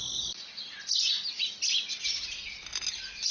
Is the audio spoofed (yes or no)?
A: no